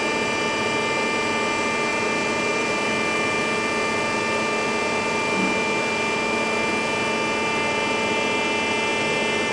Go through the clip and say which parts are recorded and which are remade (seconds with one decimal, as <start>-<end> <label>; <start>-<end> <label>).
0.0-1.9 recorded; 1.9-2.9 remade; 2.9-9.5 recorded